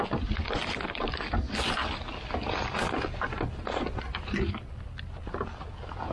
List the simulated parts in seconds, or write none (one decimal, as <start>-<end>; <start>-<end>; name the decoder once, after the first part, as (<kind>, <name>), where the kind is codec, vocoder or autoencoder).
none